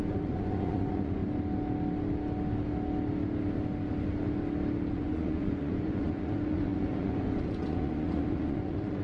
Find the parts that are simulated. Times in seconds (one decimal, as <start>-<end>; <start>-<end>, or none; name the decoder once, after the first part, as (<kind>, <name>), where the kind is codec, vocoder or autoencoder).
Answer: 0.0-1.2 (vocoder, Vocos); 4.9-9.0

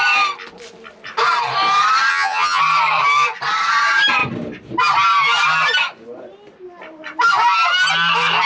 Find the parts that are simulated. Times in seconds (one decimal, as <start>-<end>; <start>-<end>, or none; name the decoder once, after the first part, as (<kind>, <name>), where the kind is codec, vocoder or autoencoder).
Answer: 2.1-2.6 (vocoder, HiFi-GAN)